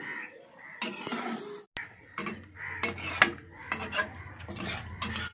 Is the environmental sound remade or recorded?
recorded